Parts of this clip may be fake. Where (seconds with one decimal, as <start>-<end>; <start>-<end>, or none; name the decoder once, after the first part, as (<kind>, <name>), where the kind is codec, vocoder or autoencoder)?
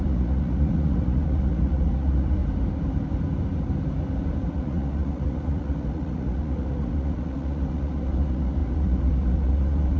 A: 0.0-2.4 (vocoder, Vocos); 4.5-10.0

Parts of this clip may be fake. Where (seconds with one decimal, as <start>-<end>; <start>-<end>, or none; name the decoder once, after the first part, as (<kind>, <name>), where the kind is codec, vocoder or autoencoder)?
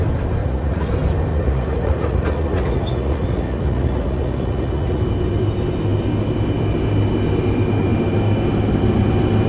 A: 0.4-0.9 (vocoder, Vocos); 1.3-5.0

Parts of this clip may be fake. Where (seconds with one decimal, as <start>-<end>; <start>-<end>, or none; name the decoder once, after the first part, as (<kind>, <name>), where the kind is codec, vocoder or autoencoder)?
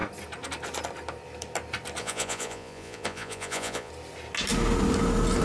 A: 2.0-3.9 (vocoder, Vocos)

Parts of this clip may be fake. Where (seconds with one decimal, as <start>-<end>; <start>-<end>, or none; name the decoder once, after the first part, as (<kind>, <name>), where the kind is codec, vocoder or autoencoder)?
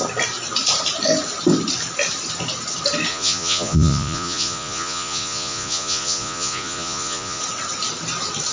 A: 3.1-7.4 (vocoder, Vocos)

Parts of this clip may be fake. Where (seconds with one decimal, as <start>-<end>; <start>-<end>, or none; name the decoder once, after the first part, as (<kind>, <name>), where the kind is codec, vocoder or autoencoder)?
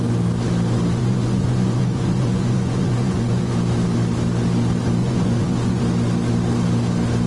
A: 1.0-3.5 (vocoder, Vocos); 5.0-5.8